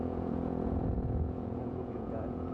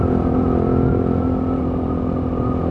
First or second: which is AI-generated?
first